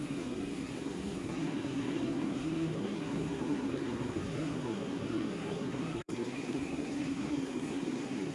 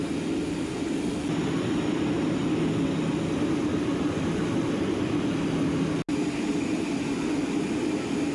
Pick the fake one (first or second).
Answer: first